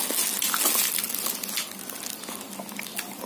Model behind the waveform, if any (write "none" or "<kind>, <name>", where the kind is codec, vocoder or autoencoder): none